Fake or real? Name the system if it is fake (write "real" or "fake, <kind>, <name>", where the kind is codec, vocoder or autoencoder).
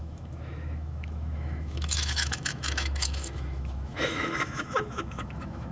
fake, autoencoder, DAC-VAE